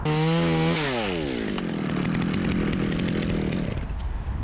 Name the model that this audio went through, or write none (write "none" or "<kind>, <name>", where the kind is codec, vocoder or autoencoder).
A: none